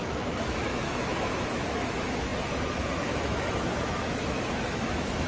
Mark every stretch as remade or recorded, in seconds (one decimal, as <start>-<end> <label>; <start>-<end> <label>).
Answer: 0.0-5.3 remade